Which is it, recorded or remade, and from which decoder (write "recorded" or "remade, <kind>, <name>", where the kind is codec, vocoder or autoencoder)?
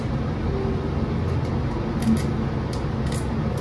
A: recorded